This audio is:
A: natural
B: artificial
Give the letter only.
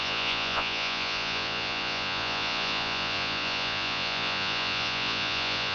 B